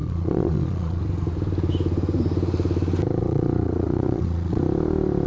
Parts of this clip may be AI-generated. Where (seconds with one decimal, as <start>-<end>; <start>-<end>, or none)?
0.0-1.0; 3.2-4.6